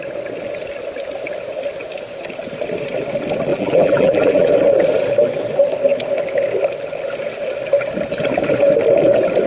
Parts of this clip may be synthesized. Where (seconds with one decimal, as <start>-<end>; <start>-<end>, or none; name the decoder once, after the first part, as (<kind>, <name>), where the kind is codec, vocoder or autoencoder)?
3.5-4.5 (vocoder, BigVGAN v2)